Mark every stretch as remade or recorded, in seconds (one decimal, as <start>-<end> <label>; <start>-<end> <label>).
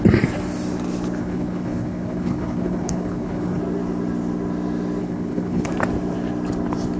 0.0-1.2 recorded; 1.2-3.6 remade; 3.6-5.0 recorded; 5.0-5.7 remade; 5.7-7.0 recorded